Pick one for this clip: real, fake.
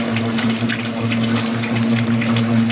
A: real